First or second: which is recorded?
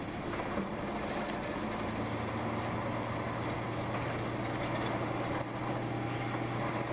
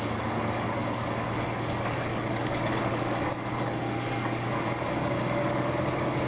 first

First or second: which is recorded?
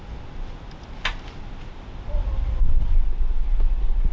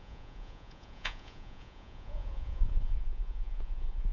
first